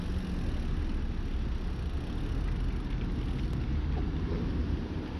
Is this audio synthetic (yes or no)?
no